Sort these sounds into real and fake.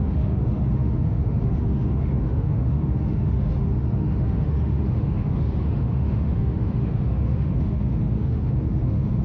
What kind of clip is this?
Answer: fake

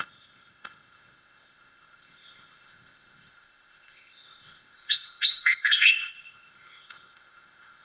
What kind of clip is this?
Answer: fake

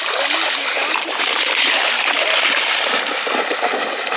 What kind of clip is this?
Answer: real